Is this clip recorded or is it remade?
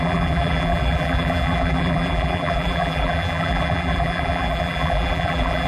remade